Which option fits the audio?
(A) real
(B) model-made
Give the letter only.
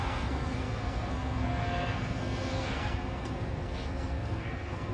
B